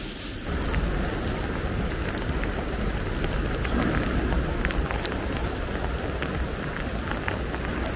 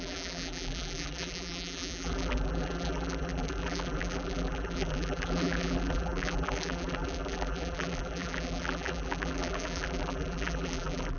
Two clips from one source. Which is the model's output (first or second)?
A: second